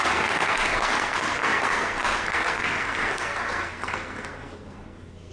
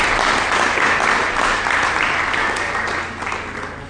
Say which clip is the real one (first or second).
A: second